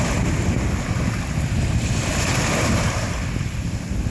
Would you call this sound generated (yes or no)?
no